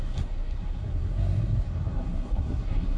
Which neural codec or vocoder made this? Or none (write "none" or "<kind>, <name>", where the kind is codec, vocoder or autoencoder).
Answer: codec, SNAC